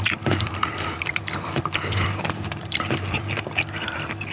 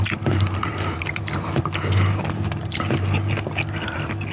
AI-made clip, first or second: first